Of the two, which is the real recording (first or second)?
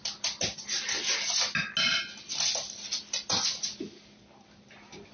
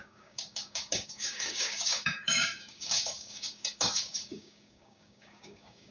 first